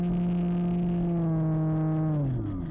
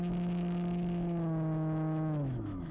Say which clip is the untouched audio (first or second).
first